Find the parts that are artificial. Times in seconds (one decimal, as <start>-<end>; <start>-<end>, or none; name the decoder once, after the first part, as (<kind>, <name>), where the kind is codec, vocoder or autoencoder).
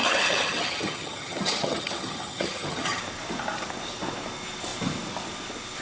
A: 0.0-3.0 (vocoder, HiFi-GAN)